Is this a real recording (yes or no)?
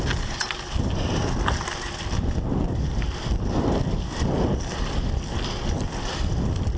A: yes